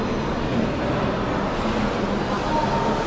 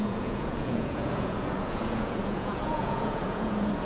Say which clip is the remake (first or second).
second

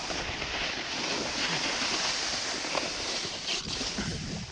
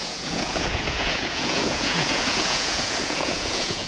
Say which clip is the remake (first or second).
second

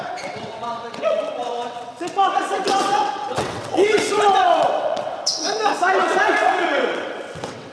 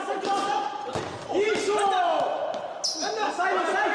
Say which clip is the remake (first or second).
first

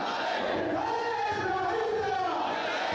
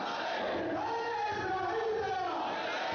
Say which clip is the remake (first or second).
first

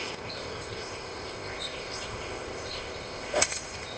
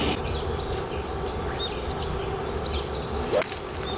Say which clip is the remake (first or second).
first